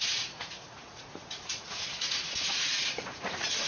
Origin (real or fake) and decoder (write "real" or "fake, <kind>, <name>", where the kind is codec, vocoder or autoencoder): fake, vocoder, Vocos